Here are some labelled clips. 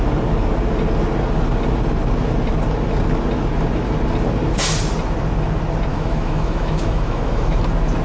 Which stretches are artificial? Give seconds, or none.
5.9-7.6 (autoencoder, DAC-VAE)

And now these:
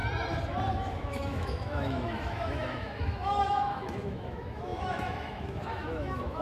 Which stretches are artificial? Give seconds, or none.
0.7-6.4 (autoencoder, DAC-VAE)

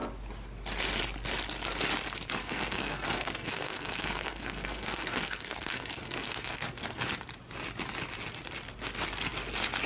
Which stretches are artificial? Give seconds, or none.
2.4-7.0 (codec, SNAC)

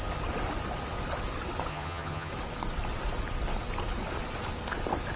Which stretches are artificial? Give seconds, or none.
1.7-2.3 (vocoder, HiFi-GAN)

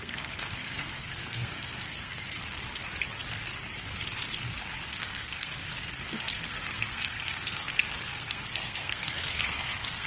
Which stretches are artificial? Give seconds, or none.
0.0-2.4 (codec, SNAC); 4.9-5.5; 6.0-10.1

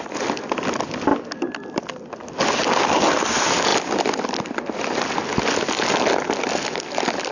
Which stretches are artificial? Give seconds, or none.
none